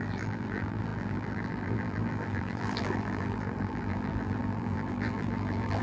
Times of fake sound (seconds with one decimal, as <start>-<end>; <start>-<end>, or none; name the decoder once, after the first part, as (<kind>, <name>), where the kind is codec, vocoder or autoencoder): 0.0-5.8 (vocoder, BigVGAN v2)